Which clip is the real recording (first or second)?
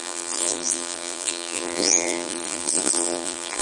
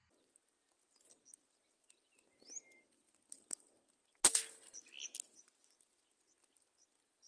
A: second